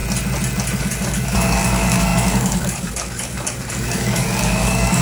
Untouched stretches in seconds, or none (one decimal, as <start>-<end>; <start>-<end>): 0.0-0.8